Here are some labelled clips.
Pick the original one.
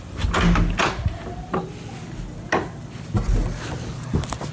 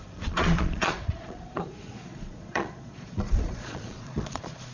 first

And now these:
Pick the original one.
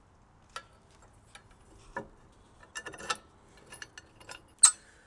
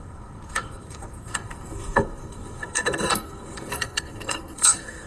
first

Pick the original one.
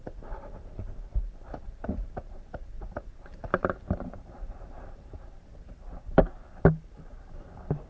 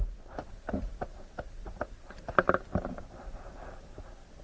second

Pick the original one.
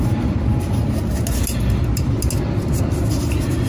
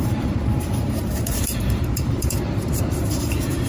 first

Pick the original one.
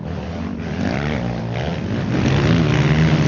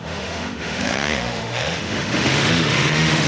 first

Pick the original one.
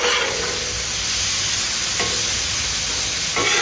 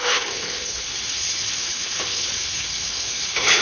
first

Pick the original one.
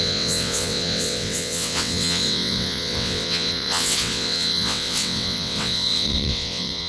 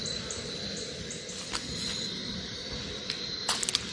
second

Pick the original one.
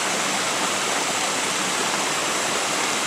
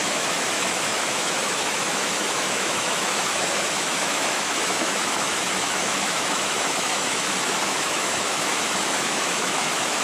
first